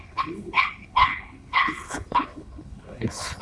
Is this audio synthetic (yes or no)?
yes